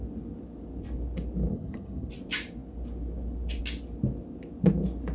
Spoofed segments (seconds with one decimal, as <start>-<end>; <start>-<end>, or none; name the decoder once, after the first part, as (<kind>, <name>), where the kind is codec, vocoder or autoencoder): 1.5-2.1 (vocoder, HiFi-GAN)